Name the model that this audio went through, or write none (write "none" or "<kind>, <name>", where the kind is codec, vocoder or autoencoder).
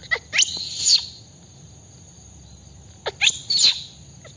none